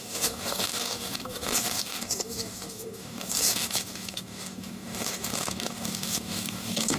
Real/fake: fake